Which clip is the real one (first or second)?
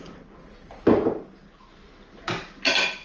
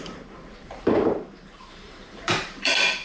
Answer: first